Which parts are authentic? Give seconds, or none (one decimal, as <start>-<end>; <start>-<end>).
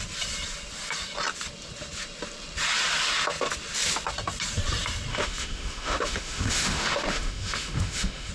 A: 0.0-5.1